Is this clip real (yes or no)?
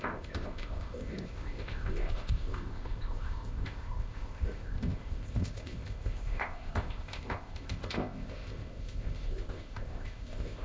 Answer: no